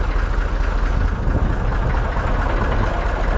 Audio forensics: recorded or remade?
recorded